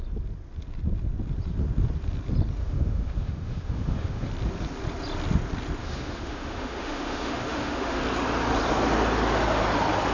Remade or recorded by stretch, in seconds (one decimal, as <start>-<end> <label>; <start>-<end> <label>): 0.0-2.6 recorded; 2.6-4.3 remade; 4.3-5.8 recorded; 5.8-8.0 remade; 8.0-10.1 recorded